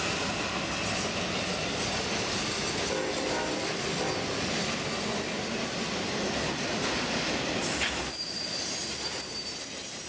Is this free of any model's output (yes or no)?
yes